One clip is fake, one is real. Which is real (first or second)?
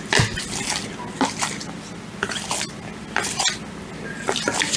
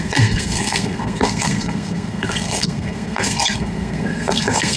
first